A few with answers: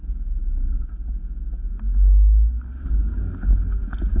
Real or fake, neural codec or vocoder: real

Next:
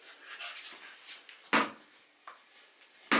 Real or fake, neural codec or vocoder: real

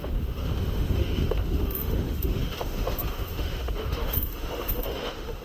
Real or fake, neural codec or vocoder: fake, autoencoder, DAC-VAE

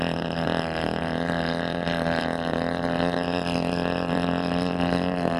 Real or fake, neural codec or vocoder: fake, vocoder, BigVGAN v2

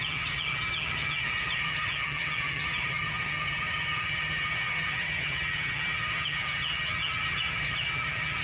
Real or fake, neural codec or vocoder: fake, vocoder, HiFi-GAN